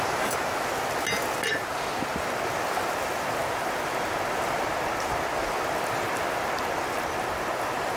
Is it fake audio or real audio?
real